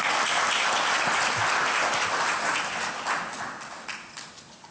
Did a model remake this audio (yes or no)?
no